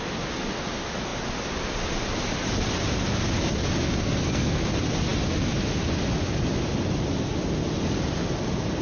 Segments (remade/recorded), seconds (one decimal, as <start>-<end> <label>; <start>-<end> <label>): 0.0-4.0 recorded; 4.0-4.6 remade; 4.6-8.8 recorded